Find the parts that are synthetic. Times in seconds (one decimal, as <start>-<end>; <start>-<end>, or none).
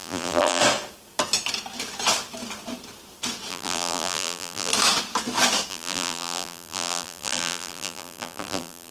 0.0-0.6; 3.5-4.7; 5.7-8.9